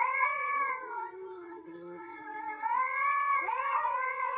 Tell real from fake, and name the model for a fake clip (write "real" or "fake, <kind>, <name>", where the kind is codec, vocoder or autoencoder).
fake, vocoder, WaveNeXt